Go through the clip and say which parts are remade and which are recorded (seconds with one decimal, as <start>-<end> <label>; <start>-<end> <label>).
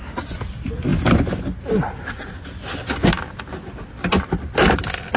0.0-5.2 recorded